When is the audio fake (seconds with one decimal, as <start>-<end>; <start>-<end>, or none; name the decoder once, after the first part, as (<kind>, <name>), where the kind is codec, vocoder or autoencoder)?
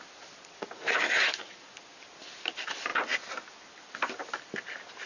0.8-1.7 (vocoder, BigVGAN v2)